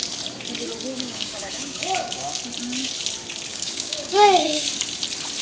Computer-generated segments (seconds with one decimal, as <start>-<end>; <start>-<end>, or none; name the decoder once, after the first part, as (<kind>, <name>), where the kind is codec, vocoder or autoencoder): 0.9-2.4 (codec, DAC); 3.5-4.7